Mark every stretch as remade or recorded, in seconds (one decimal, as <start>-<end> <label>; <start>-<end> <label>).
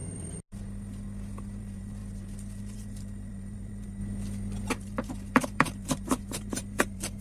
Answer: 0.0-1.6 recorded; 1.6-2.0 remade; 2.0-2.6 recorded; 2.6-4.0 remade; 4.0-4.7 recorded; 4.7-7.2 remade